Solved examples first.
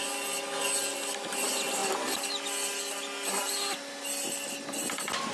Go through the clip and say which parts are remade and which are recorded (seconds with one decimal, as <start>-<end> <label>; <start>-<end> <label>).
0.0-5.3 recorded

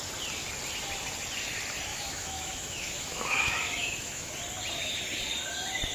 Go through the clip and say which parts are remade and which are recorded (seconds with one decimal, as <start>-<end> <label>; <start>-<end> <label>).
0.0-1.9 recorded; 1.9-4.3 remade; 4.3-5.9 recorded

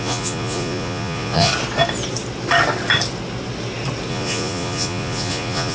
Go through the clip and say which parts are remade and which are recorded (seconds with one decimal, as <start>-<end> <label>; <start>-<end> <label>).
0.0-1.5 remade; 1.5-4.1 recorded; 4.1-5.7 remade

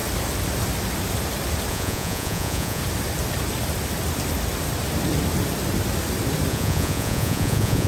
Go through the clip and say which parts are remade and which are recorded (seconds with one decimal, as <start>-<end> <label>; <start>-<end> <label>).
0.0-1.7 recorded; 1.7-2.8 remade; 2.8-6.5 recorded; 6.5-7.9 remade